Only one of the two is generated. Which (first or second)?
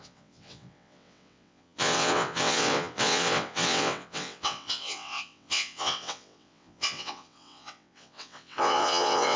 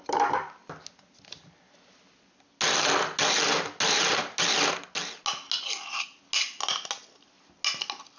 first